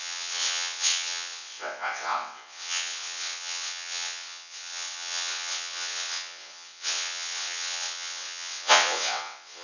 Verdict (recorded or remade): remade